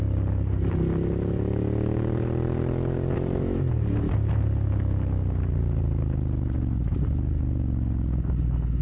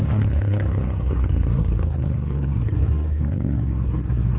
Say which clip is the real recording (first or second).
first